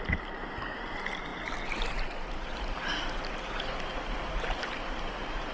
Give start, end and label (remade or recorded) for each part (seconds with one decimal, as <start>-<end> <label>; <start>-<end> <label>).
0.0-5.5 recorded